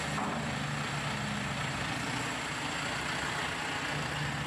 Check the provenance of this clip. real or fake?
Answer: real